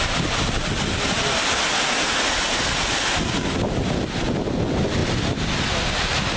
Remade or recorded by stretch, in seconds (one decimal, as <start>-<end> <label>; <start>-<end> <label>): 0.0-6.4 recorded

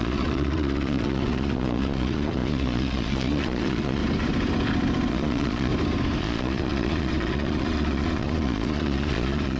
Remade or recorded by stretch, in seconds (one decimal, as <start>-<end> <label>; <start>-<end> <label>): 0.0-4.0 remade; 4.0-5.1 recorded; 5.1-5.7 remade; 5.7-6.2 recorded; 6.2-9.6 remade

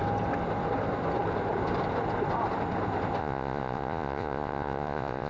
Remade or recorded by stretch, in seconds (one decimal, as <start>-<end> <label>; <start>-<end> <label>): 0.0-3.2 recorded; 3.2-5.3 remade

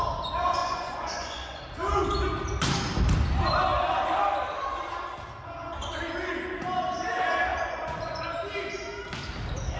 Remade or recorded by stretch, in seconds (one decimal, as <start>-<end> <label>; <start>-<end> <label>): 0.0-0.6 recorded; 0.6-1.6 remade; 1.6-7.5 recorded; 7.5-8.2 remade; 8.2-9.8 recorded